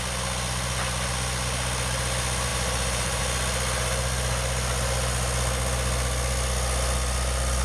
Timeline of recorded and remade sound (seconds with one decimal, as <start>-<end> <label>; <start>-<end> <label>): 0.0-2.5 recorded; 2.5-3.2 remade; 3.2-7.6 recorded